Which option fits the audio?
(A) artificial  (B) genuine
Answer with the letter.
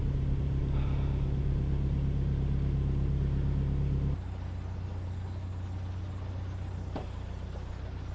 B